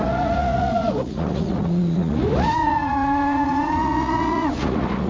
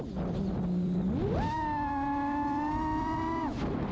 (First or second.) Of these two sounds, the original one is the second